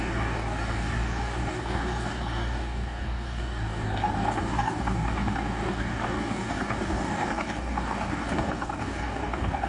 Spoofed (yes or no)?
yes